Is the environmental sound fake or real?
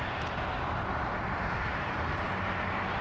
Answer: real